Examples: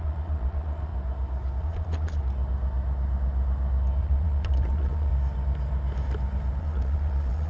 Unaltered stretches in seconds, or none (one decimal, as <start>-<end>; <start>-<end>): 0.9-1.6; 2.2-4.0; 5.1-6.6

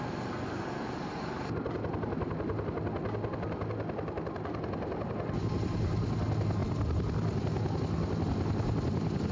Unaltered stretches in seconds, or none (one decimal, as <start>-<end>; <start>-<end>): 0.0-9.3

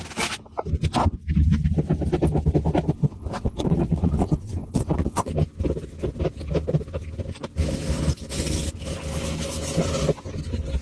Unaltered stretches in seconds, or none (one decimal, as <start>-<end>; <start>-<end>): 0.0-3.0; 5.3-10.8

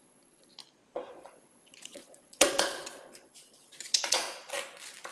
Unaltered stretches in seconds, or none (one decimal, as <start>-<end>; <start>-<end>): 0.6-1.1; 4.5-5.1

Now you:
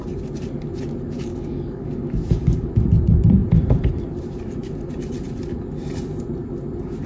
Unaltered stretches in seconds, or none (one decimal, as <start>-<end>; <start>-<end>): 0.0-1.3; 2.7-7.1

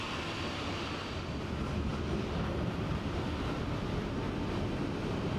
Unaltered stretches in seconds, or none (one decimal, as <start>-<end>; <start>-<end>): 0.0-5.4